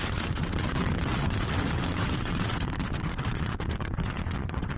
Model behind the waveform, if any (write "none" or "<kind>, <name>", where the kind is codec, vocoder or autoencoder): vocoder, WaveNeXt